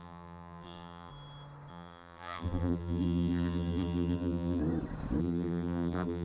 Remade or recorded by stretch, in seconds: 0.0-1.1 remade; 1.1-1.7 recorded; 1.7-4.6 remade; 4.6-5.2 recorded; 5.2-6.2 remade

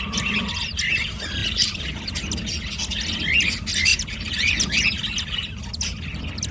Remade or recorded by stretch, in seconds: 0.0-1.4 recorded; 1.4-2.0 remade; 2.0-3.9 recorded; 3.9-4.8 remade; 4.8-6.5 recorded

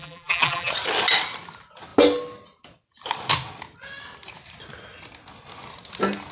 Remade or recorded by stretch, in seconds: 0.0-0.7 remade; 0.7-6.3 recorded

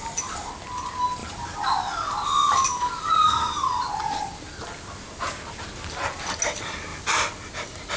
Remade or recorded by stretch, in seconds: 0.0-1.2 recorded; 1.2-5.6 remade; 5.6-6.9 recorded; 6.9-7.5 remade; 7.5-8.0 recorded

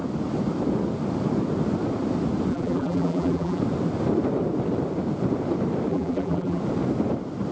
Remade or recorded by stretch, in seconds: 0.0-2.5 recorded; 2.5-3.6 remade; 3.6-5.9 recorded; 5.9-6.6 remade; 6.6-7.5 recorded

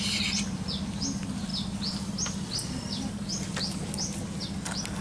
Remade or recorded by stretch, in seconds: 0.0-5.0 recorded

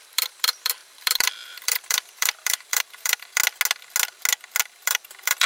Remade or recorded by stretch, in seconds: 0.0-3.4 remade; 3.4-4.6 recorded; 4.6-5.5 remade